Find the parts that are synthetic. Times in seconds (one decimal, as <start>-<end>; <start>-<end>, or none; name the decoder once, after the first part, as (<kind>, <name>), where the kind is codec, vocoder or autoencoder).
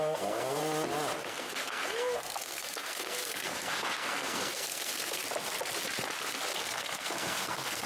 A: 0.0-0.6 (codec, SNAC); 1.2-5.2; 6.6-7.9